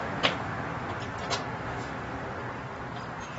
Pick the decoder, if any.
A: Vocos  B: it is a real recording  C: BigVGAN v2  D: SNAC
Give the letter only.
B